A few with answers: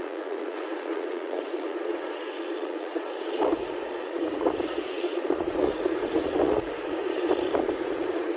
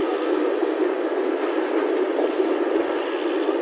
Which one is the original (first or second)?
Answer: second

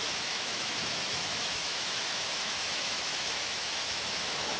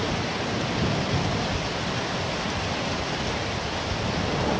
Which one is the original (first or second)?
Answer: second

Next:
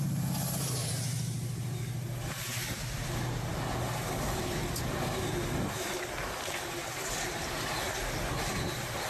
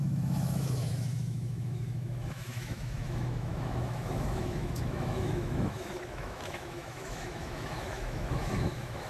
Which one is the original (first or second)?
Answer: first